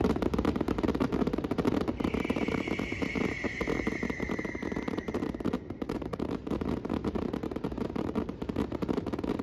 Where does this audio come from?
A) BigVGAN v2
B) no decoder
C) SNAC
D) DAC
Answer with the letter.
A